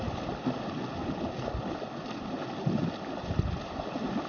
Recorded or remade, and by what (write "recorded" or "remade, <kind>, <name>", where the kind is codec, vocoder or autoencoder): recorded